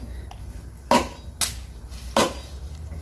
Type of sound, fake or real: real